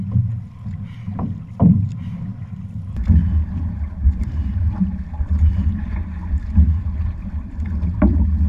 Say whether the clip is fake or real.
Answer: real